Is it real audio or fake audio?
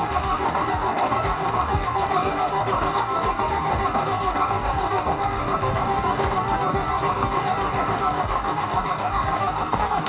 fake